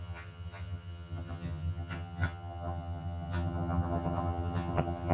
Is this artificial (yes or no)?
yes